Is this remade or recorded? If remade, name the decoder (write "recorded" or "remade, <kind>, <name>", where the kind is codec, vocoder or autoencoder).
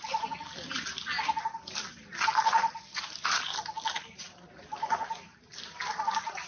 recorded